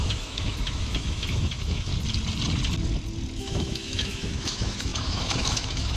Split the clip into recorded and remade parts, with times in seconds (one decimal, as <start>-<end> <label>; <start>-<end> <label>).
0.0-1.9 remade; 1.9-3.4 recorded; 3.4-6.0 remade